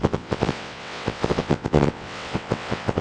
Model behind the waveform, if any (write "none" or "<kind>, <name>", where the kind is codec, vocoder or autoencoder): vocoder, WaveNeXt